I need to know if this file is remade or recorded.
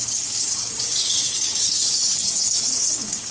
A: remade